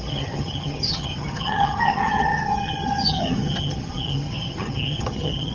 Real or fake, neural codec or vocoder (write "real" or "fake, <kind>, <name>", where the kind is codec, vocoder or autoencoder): fake, vocoder, HiFi-GAN